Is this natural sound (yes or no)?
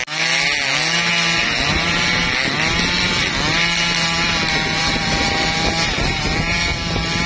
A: yes